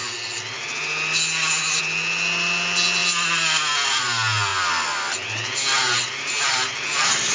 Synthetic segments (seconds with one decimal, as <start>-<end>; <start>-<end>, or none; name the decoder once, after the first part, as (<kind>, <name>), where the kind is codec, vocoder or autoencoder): none